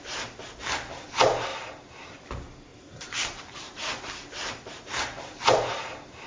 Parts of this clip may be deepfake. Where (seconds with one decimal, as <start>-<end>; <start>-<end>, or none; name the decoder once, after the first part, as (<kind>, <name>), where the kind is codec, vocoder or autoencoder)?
1.5-2.1 (vocoder, BigVGAN v2); 2.7-6.3